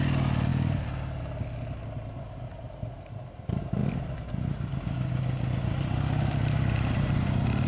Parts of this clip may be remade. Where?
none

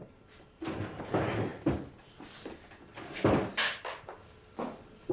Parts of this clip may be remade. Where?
none

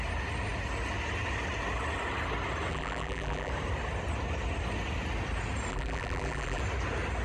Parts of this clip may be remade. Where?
2.7-3.5 (vocoder, BigVGAN v2); 5.7-6.6

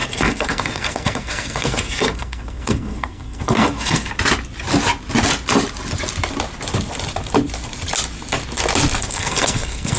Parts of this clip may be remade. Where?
0.0-4.1 (codec, SNAC); 9.0-10.0

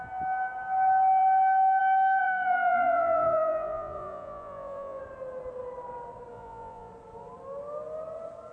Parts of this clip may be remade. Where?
2.2-5.0 (vocoder, Vocos); 6.3-6.9

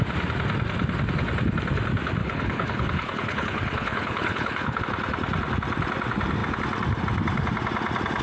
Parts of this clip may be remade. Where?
2.2-4.8 (codec, HILCodec)

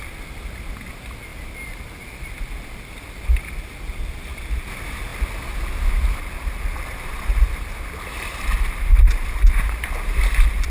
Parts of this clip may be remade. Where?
8.9-9.4 (vocoder, BigVGAN v2)

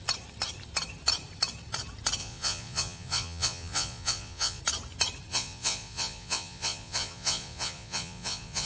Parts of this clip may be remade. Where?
2.2-4.6 (vocoder, Vocos); 5.3-8.7